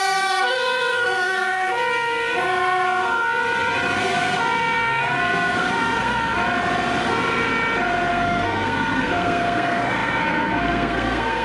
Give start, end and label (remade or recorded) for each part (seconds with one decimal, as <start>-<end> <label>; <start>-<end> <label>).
0.0-3.4 remade; 3.4-4.0 recorded; 4.0-6.4 remade; 6.4-7.0 recorded; 7.0-7.5 remade; 7.5-8.1 recorded; 8.1-11.4 remade